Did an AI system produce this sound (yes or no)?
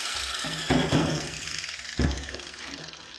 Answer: yes